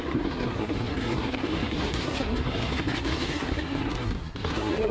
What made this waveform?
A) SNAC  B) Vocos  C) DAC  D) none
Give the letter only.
A